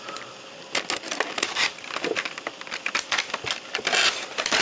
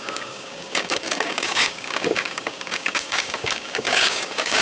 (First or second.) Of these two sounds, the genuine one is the first